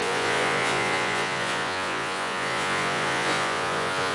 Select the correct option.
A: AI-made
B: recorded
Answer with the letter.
A